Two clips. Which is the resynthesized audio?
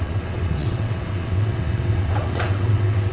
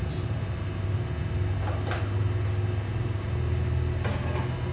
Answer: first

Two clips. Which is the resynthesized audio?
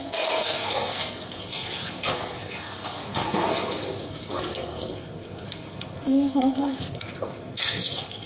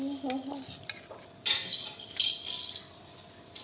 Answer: first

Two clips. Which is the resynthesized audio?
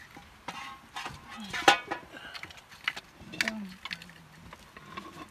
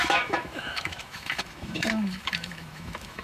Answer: second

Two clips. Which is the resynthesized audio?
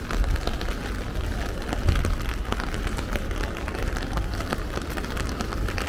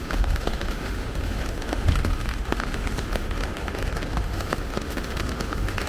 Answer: second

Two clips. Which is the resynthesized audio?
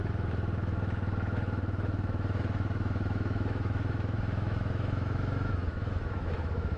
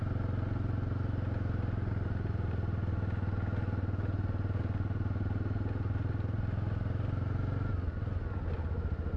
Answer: first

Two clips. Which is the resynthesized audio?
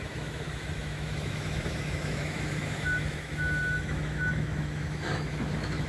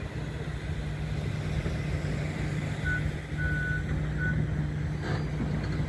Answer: first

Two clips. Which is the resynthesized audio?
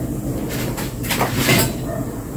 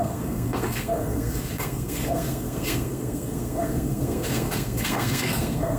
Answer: second